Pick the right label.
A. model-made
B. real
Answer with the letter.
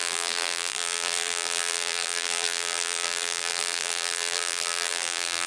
A